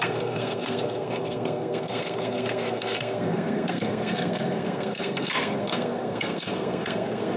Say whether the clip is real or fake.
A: fake